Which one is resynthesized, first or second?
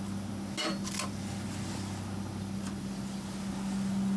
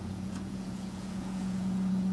second